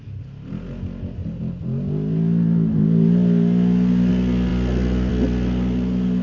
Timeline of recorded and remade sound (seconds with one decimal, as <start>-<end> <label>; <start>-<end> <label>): 0.0-6.2 recorded